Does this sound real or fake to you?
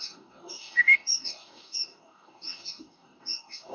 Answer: fake